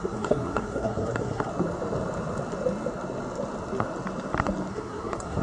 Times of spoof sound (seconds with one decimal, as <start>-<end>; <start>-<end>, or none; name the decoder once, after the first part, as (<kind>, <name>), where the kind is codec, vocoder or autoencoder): 0.0-1.5 (codec, SNAC); 4.7-5.4